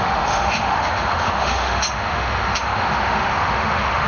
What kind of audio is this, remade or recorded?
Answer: remade